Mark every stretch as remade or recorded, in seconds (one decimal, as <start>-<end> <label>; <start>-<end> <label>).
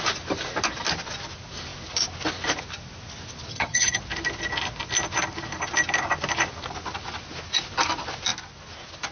0.0-3.5 recorded; 3.5-4.0 remade; 4.0-9.1 recorded